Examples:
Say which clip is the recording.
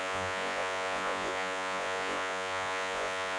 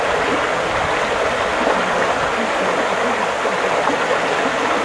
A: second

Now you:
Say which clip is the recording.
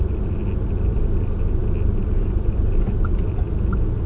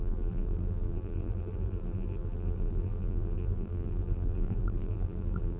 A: first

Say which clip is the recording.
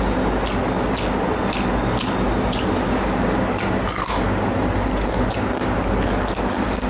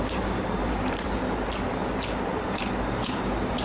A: first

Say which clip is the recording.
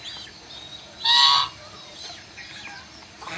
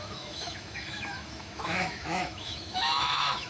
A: first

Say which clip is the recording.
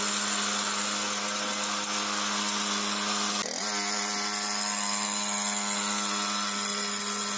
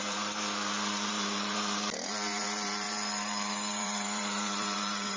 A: first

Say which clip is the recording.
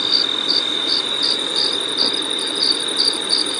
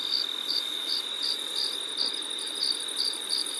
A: second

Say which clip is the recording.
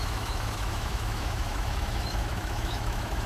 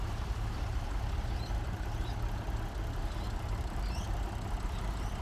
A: second